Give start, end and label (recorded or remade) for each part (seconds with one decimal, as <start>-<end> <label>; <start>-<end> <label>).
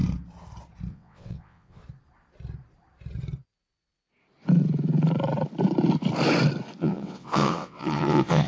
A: 0.0-0.9 recorded; 0.9-1.8 remade; 1.8-6.8 recorded; 6.8-8.5 remade